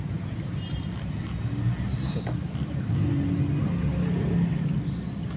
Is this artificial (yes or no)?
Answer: no